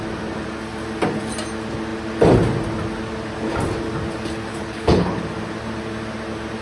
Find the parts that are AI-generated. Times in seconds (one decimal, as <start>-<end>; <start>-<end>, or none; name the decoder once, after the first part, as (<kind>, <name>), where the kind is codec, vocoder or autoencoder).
4.5-5.2 (codec, HILCodec)